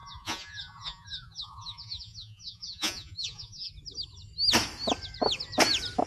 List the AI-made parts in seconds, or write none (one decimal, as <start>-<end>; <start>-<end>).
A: 0.0-3.7